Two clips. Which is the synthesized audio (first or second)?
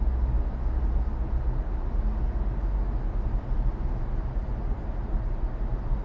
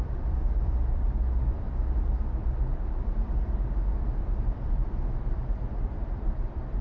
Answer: second